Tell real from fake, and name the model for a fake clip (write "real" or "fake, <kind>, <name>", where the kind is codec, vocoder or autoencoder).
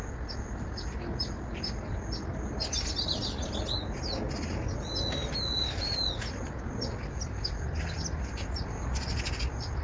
real